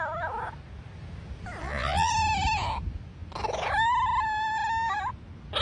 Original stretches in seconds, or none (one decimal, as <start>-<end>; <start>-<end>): 0.0-1.6; 2.1-5.6